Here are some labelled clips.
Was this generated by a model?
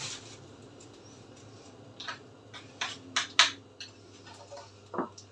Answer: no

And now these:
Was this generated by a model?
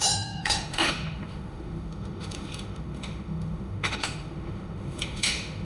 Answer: yes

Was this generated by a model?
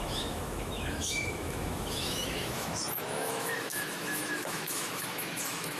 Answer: yes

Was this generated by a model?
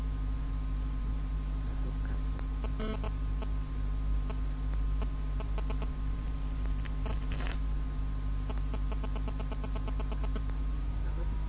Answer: yes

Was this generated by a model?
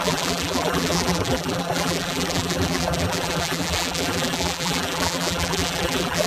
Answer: yes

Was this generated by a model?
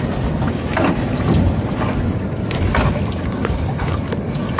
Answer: no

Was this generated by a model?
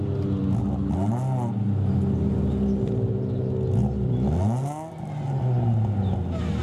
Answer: no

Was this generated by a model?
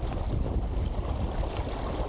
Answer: no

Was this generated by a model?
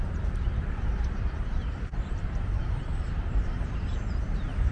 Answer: yes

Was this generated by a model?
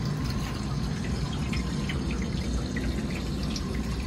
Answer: no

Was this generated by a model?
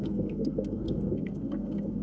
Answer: yes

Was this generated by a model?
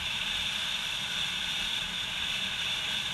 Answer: yes